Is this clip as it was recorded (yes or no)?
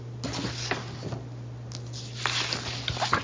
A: yes